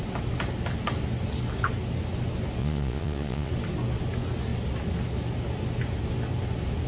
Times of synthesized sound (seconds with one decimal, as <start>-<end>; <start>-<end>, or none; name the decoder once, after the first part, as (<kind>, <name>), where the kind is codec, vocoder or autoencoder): 2.6-3.5 (vocoder, Vocos)